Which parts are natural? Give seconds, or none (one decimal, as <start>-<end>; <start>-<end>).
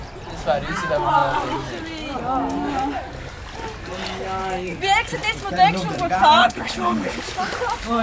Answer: 0.0-6.4; 7.2-8.0